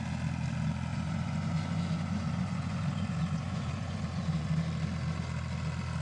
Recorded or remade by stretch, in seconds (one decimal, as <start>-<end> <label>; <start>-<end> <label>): 0.0-0.9 recorded; 0.9-4.5 remade; 4.5-6.0 recorded